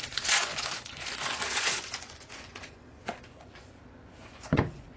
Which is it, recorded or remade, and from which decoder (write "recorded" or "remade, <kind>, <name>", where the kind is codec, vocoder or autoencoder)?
remade, vocoder, Vocos